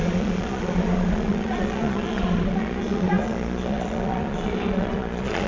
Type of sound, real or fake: fake